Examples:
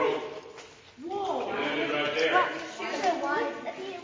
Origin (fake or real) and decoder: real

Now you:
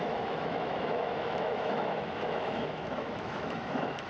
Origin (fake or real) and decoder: fake, autoencoder, DAC-VAE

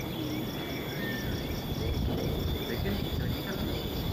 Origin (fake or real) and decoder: real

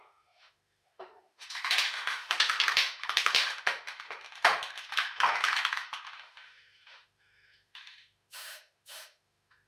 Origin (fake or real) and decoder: fake, autoencoder, DAC-VAE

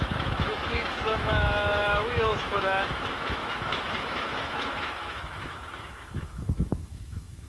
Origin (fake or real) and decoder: fake, autoencoder, DAC-VAE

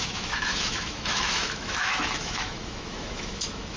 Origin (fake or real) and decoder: fake, autoencoder, DAC-VAE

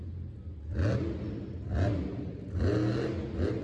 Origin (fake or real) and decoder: real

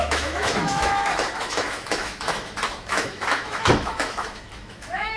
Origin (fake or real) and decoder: fake, autoencoder, DAC-VAE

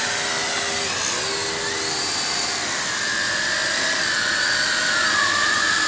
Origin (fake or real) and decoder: real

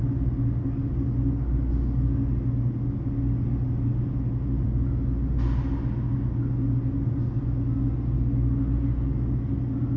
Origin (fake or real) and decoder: real